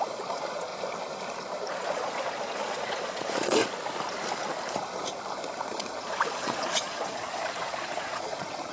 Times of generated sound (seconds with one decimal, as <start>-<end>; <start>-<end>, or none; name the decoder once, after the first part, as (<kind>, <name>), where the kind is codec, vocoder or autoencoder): 0.0-0.7 (vocoder, Vocos); 1.7-3.6; 5.6-8.7